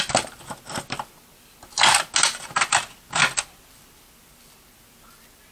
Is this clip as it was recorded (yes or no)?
yes